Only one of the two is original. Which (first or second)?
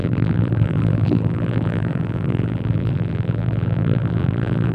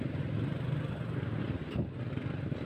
second